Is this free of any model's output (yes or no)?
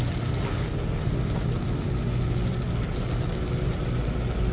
yes